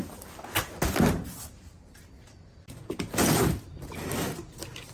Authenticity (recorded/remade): recorded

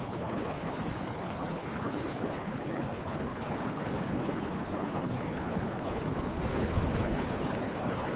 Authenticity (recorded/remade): remade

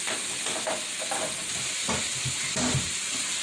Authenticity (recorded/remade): recorded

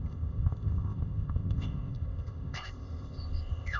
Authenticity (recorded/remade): remade